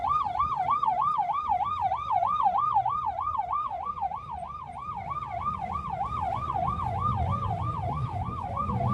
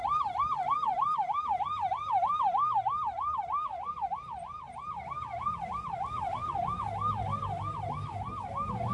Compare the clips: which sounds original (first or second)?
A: second